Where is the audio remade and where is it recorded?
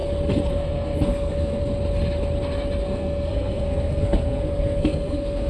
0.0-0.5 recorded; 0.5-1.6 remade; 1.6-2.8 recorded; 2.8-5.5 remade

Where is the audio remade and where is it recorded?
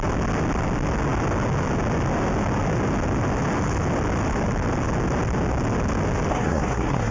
0.0-6.3 recorded; 6.3-7.1 remade